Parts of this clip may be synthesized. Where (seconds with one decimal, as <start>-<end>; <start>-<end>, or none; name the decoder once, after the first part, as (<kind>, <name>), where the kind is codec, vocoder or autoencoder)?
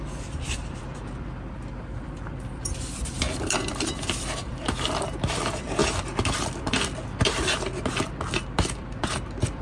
0.0-9.6 (vocoder, BigVGAN v2)